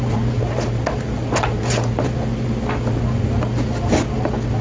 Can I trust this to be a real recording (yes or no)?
yes